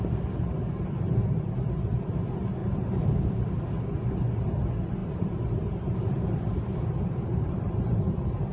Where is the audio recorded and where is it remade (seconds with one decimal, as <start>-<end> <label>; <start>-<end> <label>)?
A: 0.0-1.2 recorded; 1.2-2.1 remade; 2.1-2.6 recorded; 2.6-3.5 remade; 3.5-5.0 recorded; 5.0-8.0 remade; 8.0-8.5 recorded